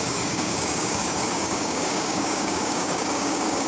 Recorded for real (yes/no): no